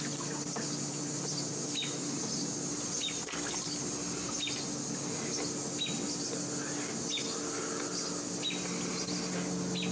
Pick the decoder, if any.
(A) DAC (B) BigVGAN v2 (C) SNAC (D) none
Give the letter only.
D